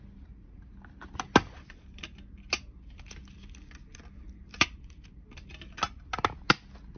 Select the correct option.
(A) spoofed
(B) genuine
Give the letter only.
B